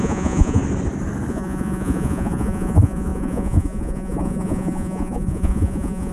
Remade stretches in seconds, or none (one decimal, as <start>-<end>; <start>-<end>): 0.0-0.6; 1.3-6.1